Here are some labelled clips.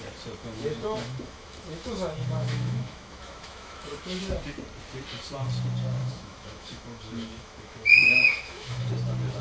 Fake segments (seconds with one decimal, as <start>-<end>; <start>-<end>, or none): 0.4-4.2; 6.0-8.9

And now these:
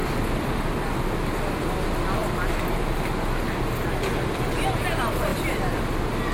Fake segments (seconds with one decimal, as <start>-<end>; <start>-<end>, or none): 0.0-0.8; 5.3-5.8

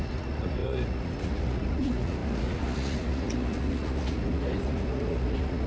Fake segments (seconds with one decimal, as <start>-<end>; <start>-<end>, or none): 0.0-5.7

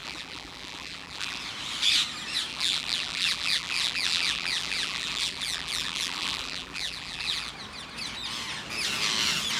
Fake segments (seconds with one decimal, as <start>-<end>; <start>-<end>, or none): 0.0-1.4; 2.5-7.5

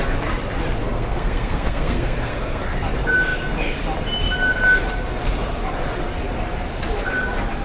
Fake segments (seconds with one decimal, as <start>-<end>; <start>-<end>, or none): 0.8-2.6

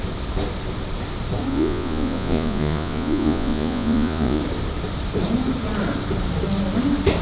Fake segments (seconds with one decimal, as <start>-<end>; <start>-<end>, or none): 1.5-4.4

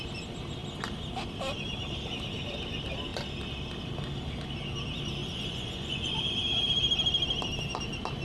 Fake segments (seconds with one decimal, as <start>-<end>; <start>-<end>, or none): 5.2-6.2

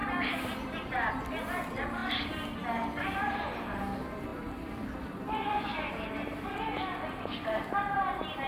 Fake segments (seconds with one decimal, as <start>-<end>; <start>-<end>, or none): 0.0-1.1; 2.0-2.6; 4.3-7.7